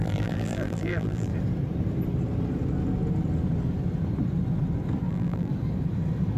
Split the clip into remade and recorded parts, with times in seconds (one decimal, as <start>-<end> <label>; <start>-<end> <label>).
0.0-1.3 remade; 1.3-5.1 recorded; 5.1-5.5 remade; 5.5-6.4 recorded